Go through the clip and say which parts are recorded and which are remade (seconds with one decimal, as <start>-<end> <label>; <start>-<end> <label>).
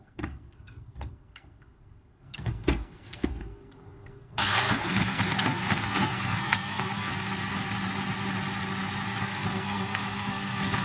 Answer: 0.0-7.1 remade; 7.1-9.2 recorded; 9.2-10.8 remade